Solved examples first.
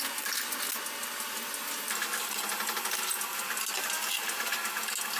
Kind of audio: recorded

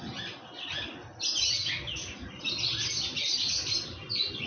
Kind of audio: recorded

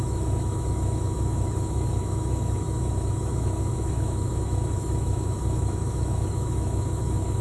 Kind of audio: remade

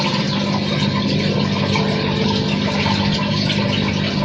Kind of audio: recorded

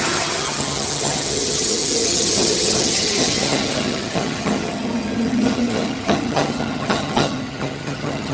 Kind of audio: remade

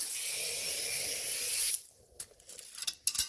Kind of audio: recorded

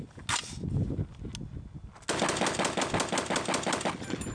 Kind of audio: recorded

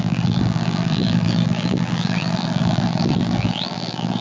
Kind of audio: remade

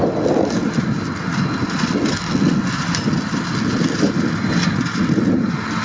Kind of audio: recorded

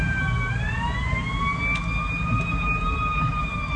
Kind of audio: recorded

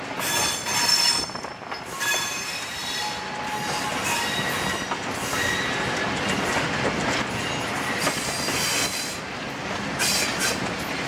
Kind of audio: recorded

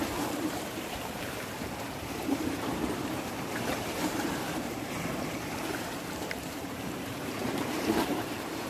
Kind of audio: remade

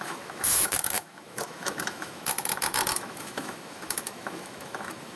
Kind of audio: remade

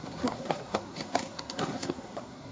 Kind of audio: remade